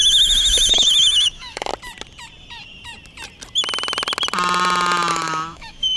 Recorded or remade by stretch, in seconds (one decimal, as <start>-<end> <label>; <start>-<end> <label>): 0.0-1.7 remade; 1.7-5.1 recorded; 5.1-6.0 remade